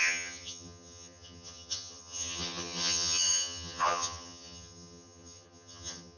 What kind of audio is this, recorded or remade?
remade